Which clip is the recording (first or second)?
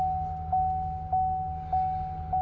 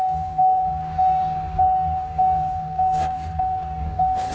first